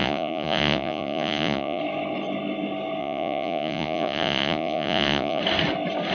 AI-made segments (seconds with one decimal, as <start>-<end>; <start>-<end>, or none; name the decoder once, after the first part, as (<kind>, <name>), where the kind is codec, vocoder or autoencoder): 0.0-1.8 (vocoder, Vocos); 3.0-5.4